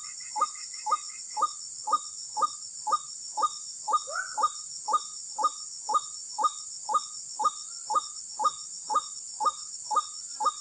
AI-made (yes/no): no